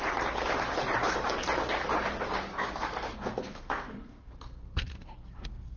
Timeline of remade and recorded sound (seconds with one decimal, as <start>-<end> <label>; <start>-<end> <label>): 0.0-2.5 recorded; 2.5-5.8 remade